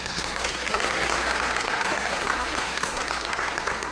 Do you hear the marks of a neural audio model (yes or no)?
yes